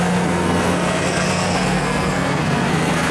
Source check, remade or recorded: remade